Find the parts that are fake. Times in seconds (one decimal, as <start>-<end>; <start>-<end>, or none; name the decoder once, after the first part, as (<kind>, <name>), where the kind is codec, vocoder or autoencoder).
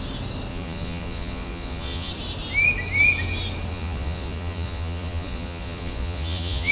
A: 0.5-2.1 (vocoder, Vocos); 3.7-6.7